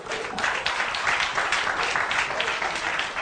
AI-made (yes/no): no